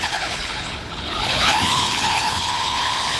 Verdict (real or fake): fake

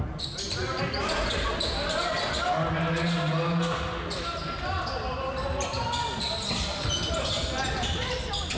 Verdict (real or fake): real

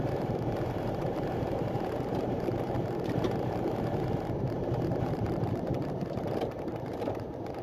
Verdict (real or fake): fake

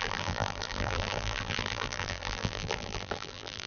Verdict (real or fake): fake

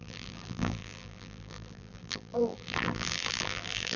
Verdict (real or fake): fake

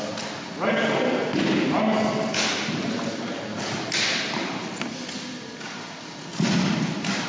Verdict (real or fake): real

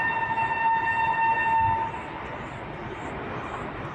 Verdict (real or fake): real